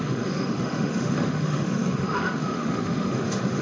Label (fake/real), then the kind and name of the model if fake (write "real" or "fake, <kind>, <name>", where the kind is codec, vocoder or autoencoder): fake, autoencoder, DAC-VAE